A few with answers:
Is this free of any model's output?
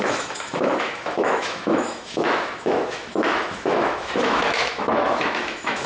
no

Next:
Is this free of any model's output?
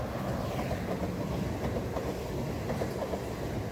yes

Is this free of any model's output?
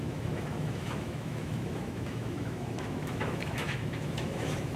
no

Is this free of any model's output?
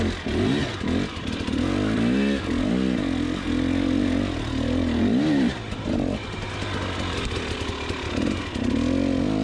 yes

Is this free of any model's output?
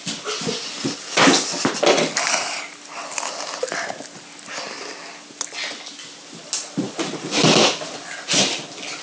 yes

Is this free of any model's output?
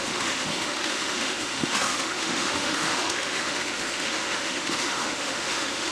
no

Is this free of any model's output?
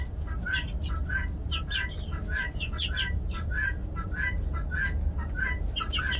yes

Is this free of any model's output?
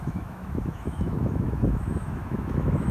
no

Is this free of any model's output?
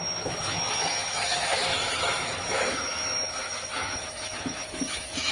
no